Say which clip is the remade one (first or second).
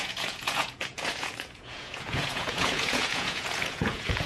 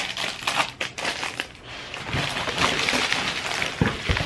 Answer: first